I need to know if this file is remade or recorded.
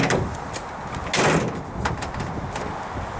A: recorded